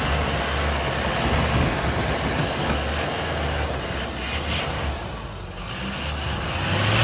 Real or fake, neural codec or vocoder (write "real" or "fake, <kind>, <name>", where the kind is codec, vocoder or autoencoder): real